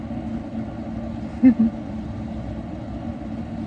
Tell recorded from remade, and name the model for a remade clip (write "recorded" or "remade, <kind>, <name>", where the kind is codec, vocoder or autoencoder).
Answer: recorded